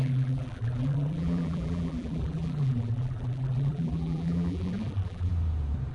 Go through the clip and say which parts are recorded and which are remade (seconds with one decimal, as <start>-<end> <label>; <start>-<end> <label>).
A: 0.0-5.3 remade; 5.3-5.9 recorded